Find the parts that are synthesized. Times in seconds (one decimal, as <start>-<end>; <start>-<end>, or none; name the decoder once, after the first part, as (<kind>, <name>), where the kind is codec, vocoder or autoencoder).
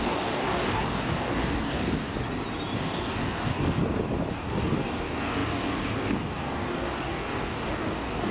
0.0-2.1 (codec, DAC); 2.8-3.8; 4.3-8.3